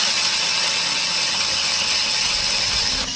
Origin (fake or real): real